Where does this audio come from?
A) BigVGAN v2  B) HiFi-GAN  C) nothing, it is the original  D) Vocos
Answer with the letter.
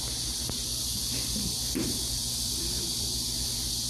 A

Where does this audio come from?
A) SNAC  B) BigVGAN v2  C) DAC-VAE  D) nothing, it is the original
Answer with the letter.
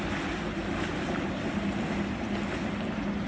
D